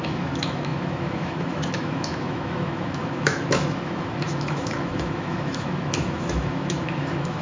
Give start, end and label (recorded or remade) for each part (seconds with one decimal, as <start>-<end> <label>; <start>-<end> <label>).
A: 0.0-7.4 remade